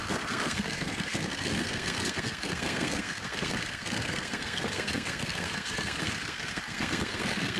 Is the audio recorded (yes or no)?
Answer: no